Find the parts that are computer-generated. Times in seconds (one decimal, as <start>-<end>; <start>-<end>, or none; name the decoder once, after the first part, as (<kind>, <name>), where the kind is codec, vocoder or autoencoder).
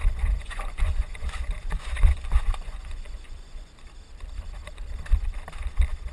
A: 0.0-3.7 (vocoder, Vocos)